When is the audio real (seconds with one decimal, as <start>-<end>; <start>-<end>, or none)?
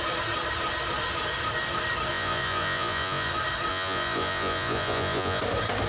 0.0-2.1; 3.3-3.7; 5.4-5.9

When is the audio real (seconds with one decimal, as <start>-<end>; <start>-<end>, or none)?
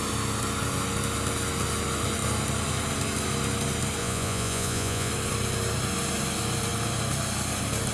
0.0-4.0; 5.1-7.9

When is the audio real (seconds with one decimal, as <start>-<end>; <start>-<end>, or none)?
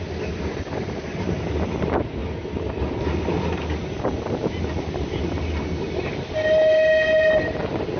0.0-8.0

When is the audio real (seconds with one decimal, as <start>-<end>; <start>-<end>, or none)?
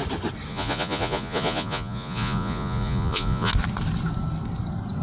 0.0-0.5; 3.5-5.0